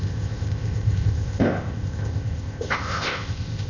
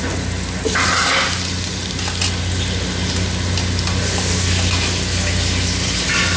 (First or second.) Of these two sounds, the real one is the second